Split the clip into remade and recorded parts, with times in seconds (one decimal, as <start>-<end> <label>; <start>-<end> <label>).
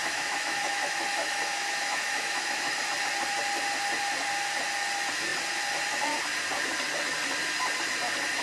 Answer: 0.0-2.8 remade; 2.8-8.4 recorded